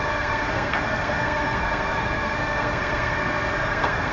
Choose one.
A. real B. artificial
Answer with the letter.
B